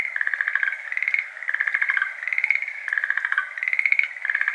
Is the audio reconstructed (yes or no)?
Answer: no